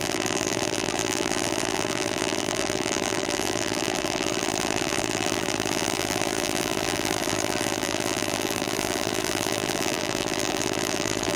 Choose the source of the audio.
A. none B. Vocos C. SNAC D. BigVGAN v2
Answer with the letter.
D